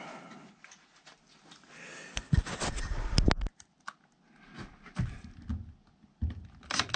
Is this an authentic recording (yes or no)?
yes